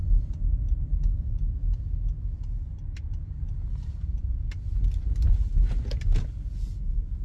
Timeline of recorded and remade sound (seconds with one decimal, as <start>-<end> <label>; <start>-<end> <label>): 0.0-7.2 recorded